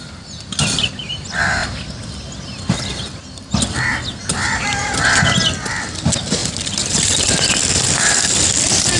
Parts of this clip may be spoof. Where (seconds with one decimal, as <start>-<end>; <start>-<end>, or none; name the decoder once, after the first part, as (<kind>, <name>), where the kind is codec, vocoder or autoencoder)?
none